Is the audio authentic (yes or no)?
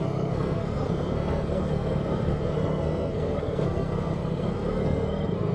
no